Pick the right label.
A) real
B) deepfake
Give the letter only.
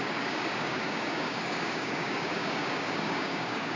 B